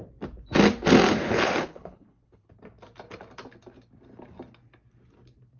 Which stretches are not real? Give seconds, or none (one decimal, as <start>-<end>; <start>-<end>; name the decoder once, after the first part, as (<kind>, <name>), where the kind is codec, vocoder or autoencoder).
1.1-2.5 (codec, HILCodec)